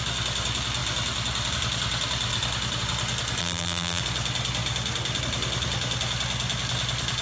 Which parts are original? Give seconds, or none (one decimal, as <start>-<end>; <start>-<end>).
0.0-3.4; 4.0-7.2